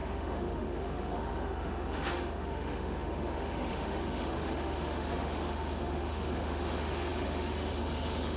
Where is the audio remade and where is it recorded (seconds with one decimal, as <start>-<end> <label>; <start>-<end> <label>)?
0.0-8.4 remade